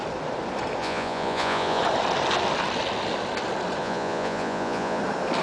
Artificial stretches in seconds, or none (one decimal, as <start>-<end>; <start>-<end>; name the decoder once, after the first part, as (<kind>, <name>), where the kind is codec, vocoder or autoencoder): 0.8-1.8 (vocoder, Vocos); 3.8-5.0